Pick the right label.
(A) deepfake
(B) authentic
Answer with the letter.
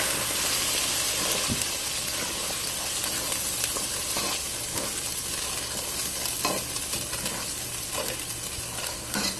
B